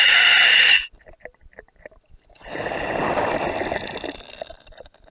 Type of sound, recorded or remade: recorded